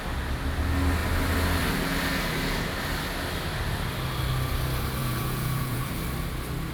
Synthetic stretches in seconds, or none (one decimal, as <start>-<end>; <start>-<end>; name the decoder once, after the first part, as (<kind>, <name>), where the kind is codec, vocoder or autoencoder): 5.0-5.9 (vocoder, Vocos)